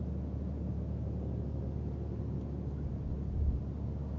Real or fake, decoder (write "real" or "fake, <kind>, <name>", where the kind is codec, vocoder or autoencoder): real